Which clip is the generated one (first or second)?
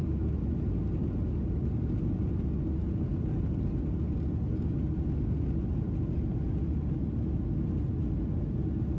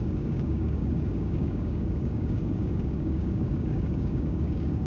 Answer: second